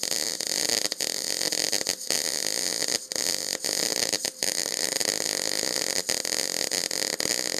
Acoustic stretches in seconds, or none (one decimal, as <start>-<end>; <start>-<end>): 0.0-3.9; 5.1-7.6